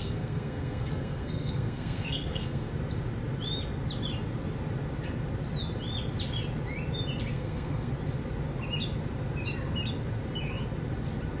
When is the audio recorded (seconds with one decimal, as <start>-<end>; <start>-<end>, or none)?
2.7-7.3; 7.9-11.4